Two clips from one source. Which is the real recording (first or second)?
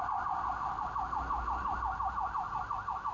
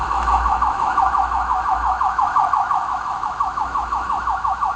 first